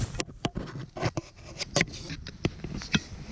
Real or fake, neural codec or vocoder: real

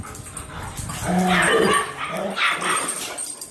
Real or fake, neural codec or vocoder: real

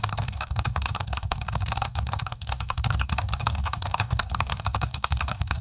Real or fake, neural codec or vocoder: fake, codec, DAC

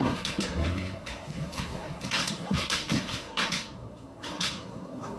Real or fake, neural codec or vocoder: fake, codec, SNAC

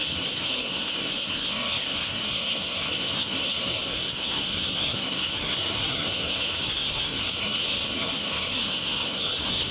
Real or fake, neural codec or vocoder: fake, codec, SNAC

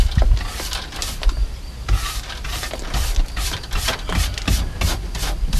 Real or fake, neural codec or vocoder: real